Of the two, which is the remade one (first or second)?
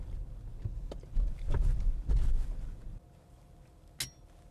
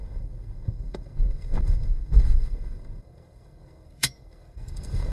second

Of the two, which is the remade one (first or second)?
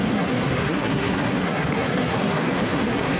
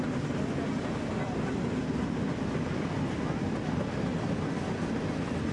first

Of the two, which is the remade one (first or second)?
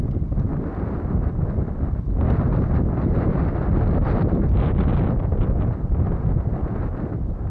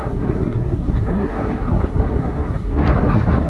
second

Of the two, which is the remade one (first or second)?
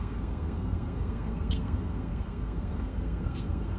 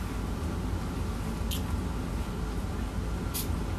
first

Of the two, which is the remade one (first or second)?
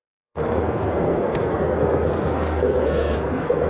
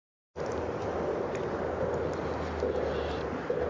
first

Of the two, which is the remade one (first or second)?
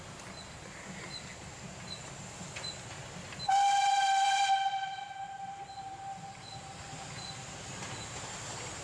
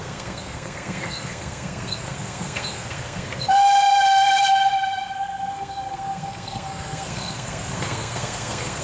second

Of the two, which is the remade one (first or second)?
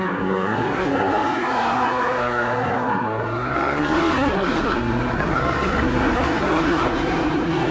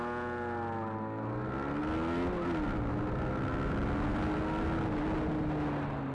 first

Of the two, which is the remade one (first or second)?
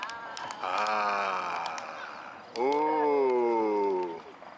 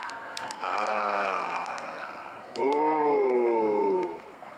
second